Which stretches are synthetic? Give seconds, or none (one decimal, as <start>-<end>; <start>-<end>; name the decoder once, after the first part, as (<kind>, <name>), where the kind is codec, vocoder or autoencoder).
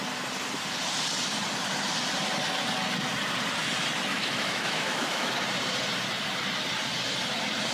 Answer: 4.1-5.3 (autoencoder, DAC-VAE)